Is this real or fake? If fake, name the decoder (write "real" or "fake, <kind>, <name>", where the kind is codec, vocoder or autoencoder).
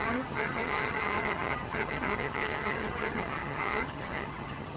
fake, vocoder, HiFi-GAN